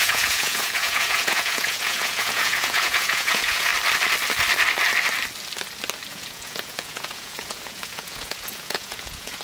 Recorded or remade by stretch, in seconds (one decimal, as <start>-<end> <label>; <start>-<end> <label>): 0.0-3.7 remade; 3.7-6.1 recorded; 6.1-9.4 remade

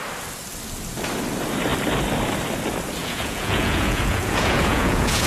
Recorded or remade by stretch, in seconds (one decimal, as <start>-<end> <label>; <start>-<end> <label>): 0.0-3.0 recorded; 3.0-5.3 remade

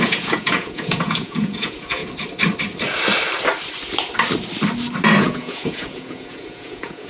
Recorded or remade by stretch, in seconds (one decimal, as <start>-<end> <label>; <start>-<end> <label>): 0.0-2.0 remade; 2.0-5.2 recorded; 5.2-7.1 remade

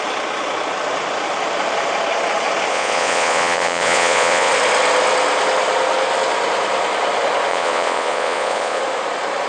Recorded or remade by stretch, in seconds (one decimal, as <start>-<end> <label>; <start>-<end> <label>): 0.0-2.7 recorded; 2.7-4.5 remade; 4.5-7.5 recorded; 7.5-8.8 remade; 8.8-9.5 recorded